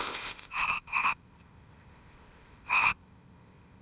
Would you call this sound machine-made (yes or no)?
yes